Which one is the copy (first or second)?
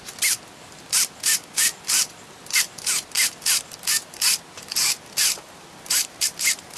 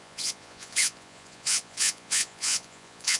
second